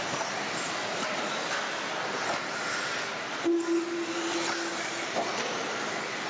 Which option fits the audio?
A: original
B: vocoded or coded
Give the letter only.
A